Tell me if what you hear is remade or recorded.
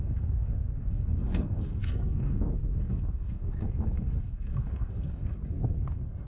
remade